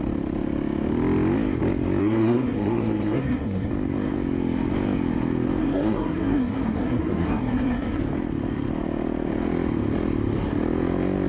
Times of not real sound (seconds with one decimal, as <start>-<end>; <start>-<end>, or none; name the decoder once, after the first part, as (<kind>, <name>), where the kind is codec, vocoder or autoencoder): 2.0-3.7 (codec, SNAC); 5.6-8.0